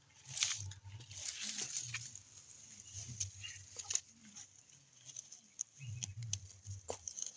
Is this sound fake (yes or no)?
no